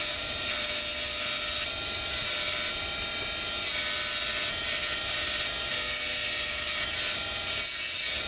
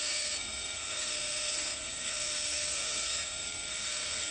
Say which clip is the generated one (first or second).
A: second